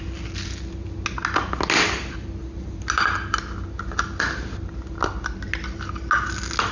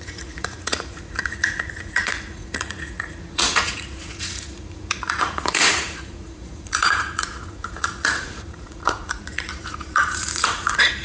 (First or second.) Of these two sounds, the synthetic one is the second